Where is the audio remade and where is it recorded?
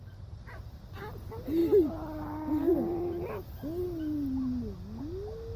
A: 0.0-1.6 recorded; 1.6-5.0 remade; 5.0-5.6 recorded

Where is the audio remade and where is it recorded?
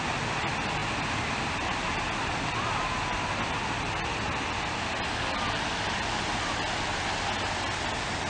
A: 0.0-8.3 recorded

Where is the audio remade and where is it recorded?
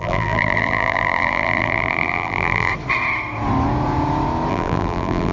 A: 0.0-2.7 remade; 2.7-4.5 recorded; 4.5-5.3 remade